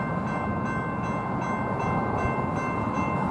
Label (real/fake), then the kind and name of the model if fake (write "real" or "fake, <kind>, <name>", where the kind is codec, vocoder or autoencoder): real